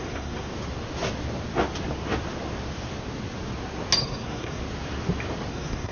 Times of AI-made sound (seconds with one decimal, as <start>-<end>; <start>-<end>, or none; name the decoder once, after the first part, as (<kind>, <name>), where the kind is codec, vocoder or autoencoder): 0.0-0.5 (codec, SNAC); 4.0-4.6; 5.5-5.9